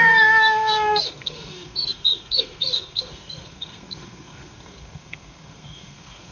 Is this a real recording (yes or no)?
no